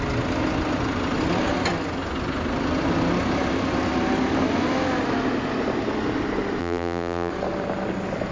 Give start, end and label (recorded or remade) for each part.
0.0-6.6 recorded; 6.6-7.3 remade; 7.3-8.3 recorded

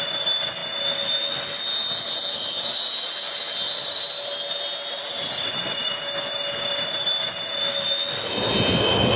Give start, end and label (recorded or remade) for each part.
0.0-9.2 recorded

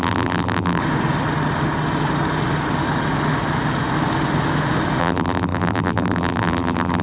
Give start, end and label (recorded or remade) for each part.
0.0-0.8 remade; 0.8-5.0 recorded; 5.0-7.0 remade

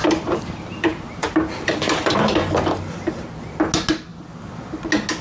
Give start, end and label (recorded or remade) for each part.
0.0-3.1 remade; 3.1-4.1 recorded; 4.1-4.8 remade; 4.8-5.2 recorded

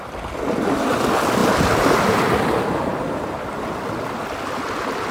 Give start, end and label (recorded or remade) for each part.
0.0-2.9 recorded; 2.9-3.5 remade; 3.5-5.1 recorded

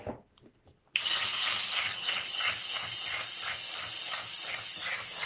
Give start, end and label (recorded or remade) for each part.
0.0-5.3 recorded

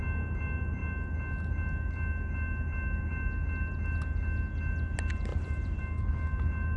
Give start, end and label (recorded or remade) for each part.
0.0-5.3 recorded; 5.3-5.8 remade; 5.8-6.8 recorded

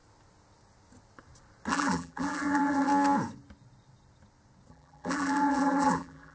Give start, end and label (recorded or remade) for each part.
0.0-1.7 recorded; 1.7-2.9 remade; 2.9-4.7 recorded; 4.7-6.3 remade